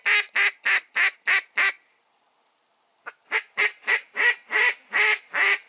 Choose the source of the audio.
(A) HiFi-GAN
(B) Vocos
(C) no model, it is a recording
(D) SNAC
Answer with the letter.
C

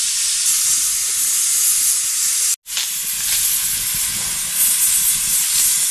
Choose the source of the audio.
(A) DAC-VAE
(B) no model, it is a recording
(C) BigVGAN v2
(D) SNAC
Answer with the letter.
B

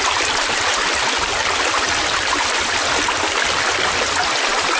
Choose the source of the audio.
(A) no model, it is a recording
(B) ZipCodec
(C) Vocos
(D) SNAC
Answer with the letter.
A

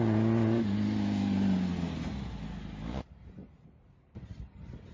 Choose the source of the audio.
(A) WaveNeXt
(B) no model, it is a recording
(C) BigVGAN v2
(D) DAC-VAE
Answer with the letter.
B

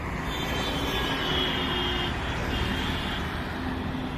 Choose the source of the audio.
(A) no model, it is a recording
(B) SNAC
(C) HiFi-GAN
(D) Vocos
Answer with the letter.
A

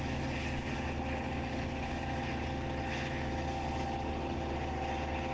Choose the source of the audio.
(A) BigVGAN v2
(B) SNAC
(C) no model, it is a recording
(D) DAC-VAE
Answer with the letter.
C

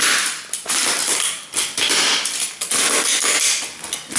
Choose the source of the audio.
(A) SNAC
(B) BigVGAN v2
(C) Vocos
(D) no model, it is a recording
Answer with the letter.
D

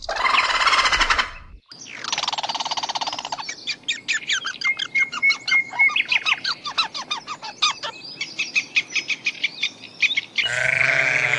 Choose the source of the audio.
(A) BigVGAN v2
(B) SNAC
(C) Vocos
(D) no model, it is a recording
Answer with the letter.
D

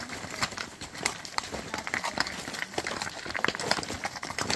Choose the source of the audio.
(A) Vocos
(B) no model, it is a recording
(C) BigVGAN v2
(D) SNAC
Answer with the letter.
C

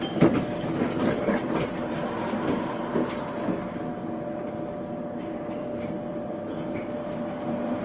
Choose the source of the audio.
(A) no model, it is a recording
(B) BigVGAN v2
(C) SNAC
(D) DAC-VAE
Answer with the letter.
A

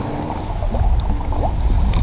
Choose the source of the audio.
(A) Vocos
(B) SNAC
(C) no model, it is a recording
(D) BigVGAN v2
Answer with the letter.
C